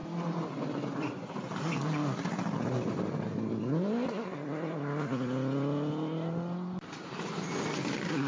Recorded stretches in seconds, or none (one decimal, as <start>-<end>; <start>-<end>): 0.0-8.3